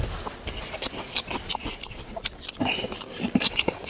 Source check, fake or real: real